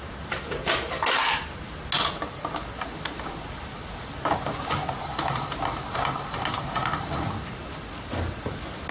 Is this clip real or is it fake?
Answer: real